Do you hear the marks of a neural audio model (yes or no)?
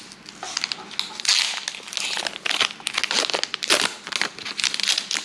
no